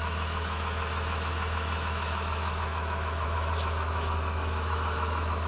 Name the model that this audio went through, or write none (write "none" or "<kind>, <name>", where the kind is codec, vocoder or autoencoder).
autoencoder, DAC-VAE